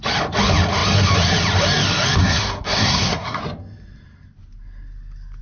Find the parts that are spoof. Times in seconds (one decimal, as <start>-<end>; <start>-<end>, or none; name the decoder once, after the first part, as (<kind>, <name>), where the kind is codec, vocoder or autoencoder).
2.2-3.4 (codec, SNAC)

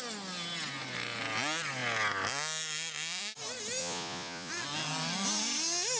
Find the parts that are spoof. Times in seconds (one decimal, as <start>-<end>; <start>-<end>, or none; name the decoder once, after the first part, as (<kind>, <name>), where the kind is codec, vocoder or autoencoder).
3.8-4.5 (vocoder, Vocos)

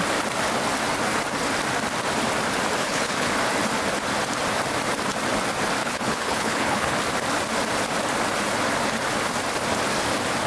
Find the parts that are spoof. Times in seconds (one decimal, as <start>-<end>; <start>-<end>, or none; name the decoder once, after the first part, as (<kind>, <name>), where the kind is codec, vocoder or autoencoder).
2.8-3.3 (codec, HILCodec); 5.8-6.9

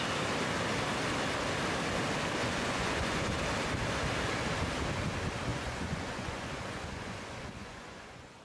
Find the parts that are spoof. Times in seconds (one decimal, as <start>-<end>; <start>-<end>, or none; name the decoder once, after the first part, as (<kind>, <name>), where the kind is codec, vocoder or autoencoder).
2.4-3.3 (vocoder, Vocos); 5.5-8.4

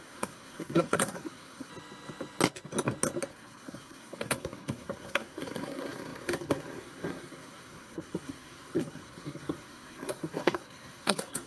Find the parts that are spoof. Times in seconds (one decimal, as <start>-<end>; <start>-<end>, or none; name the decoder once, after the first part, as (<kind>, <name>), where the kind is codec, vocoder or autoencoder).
0.0-1.7 (codec, SNAC); 3.3-11.5

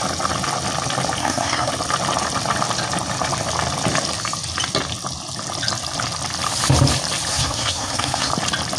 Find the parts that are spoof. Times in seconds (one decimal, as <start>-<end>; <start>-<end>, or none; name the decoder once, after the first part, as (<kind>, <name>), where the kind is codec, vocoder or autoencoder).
1.2-1.7 (codec, SNAC); 7.3-8.3